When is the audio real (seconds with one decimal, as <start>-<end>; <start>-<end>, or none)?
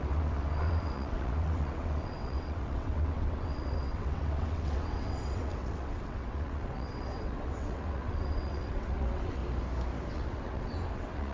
9.4-10.1